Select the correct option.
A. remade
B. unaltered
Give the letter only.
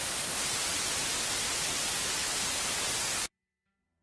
B